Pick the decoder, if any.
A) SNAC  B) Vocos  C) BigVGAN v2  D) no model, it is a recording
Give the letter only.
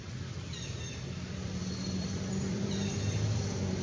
C